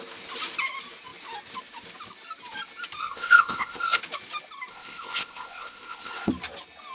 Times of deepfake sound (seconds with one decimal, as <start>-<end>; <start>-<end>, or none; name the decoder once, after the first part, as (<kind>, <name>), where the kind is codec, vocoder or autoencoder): 3.0-4.0 (codec, ZipCodec); 4.7-6.3